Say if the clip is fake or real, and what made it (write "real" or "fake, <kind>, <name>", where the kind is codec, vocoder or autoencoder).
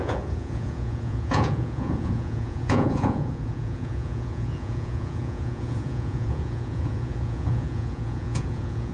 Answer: fake, vocoder, Vocos